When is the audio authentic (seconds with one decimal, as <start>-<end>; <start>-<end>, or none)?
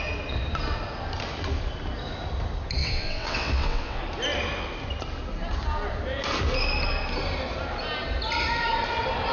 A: 0.0-2.8; 4.0-9.3